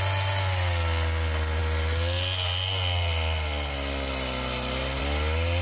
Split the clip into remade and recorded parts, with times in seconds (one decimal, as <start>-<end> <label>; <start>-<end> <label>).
0.0-5.6 recorded